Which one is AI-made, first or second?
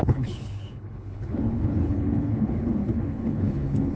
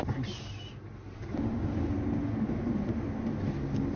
first